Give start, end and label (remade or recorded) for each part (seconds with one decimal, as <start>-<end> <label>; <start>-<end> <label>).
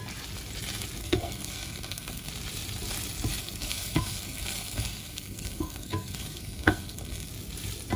0.0-1.0 recorded; 1.0-2.3 remade; 2.3-3.4 recorded; 3.4-7.3 remade; 7.3-8.0 recorded